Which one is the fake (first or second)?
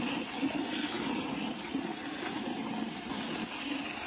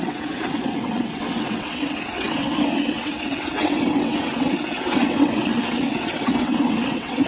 second